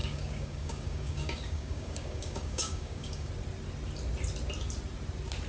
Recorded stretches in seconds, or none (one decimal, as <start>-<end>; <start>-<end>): 3.3-5.5